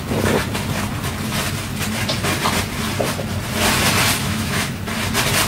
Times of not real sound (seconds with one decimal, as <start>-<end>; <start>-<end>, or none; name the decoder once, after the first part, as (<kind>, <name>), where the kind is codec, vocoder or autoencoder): 4.2-4.8 (autoencoder, DAC-VAE)